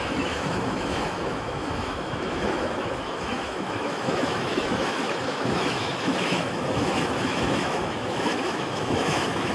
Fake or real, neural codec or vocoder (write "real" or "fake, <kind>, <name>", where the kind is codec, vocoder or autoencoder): fake, autoencoder, DAC-VAE